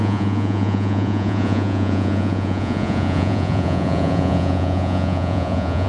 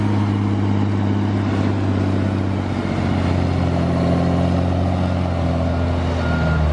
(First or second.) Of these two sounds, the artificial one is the first